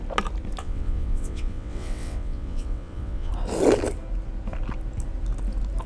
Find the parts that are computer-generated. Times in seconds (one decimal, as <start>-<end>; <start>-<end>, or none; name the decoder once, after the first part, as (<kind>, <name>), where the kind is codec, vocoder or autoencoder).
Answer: 0.6-3.3 (vocoder, WaveNeXt)